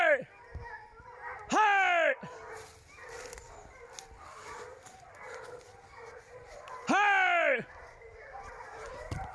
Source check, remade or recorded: recorded